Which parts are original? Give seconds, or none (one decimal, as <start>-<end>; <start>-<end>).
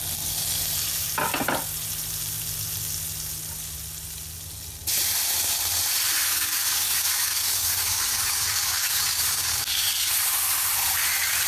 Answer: 0.0-6.3; 10.1-11.5